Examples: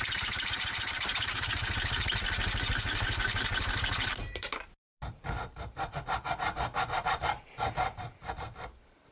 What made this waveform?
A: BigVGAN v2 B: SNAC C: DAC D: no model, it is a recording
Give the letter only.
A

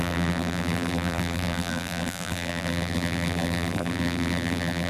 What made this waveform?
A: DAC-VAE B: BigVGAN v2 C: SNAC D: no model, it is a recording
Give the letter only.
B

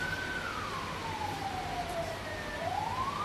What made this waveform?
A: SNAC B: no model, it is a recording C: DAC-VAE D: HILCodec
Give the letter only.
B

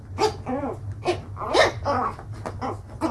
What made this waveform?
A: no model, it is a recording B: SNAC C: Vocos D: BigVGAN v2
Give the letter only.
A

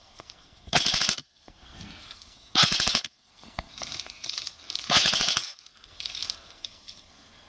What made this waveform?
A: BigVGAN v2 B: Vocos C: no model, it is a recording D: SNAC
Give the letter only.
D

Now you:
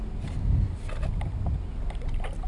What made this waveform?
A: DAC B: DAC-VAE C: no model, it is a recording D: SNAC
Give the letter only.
C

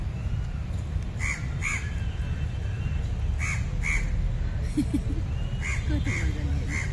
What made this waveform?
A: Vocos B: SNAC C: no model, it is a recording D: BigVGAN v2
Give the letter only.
C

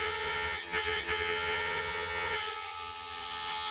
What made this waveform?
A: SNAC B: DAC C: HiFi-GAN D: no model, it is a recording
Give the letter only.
C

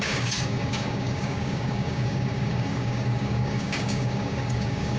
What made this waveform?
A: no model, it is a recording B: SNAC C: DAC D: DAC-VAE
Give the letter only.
C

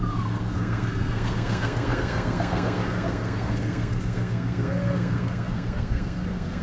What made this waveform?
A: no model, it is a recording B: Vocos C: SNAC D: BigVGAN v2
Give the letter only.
C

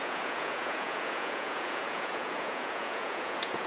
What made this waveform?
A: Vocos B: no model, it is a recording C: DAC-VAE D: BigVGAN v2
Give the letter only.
A